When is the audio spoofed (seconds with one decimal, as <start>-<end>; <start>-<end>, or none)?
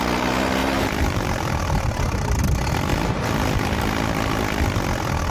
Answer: 0.6-2.4; 2.9-3.8